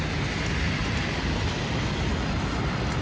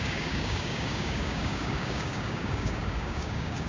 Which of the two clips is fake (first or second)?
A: second